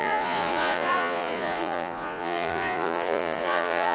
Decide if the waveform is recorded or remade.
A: remade